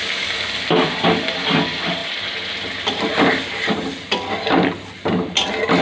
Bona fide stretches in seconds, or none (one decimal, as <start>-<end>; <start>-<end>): 0.0-5.8